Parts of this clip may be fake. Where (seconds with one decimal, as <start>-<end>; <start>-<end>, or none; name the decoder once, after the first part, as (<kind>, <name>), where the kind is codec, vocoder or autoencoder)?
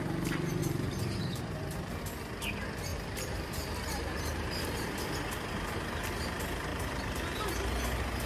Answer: 0.6-2.0 (vocoder, BigVGAN v2); 2.9-5.0; 6.7-7.4